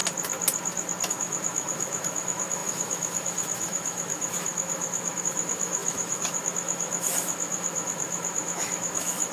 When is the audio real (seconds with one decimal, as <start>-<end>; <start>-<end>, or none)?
0.0-1.1